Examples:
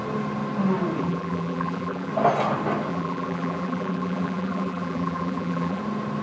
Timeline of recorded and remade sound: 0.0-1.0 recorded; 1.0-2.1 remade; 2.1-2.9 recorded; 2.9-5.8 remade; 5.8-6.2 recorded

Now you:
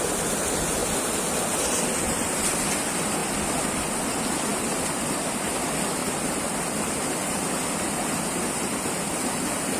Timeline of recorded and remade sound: 0.0-0.8 recorded; 0.8-2.4 remade; 2.4-6.0 recorded; 6.0-8.5 remade; 8.5-9.8 recorded

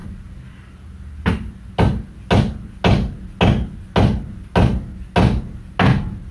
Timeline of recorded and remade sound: 0.0-6.3 recorded

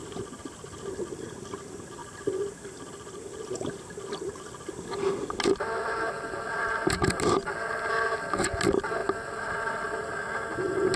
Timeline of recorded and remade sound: 0.0-1.1 remade; 1.1-2.0 recorded; 2.0-5.1 remade; 5.1-9.0 recorded; 9.0-10.3 remade; 10.3-11.0 recorded